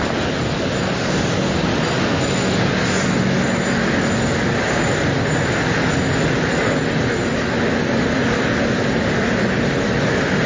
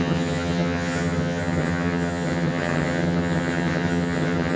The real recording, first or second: first